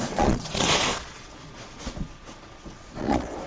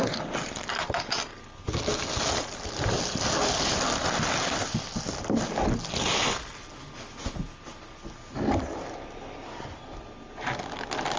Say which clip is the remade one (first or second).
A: first